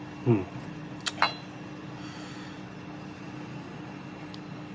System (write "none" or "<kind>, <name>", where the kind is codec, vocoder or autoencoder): none